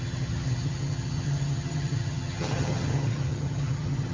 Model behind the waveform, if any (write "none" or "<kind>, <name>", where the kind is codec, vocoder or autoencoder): vocoder, HiFi-GAN